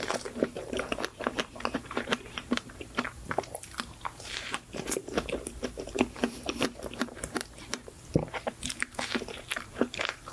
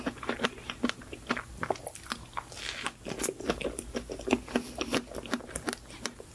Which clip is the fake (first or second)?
first